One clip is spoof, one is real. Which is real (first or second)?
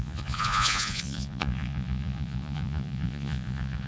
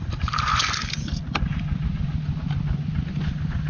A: second